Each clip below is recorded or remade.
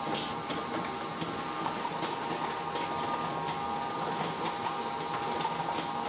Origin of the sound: recorded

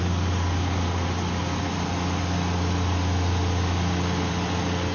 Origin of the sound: recorded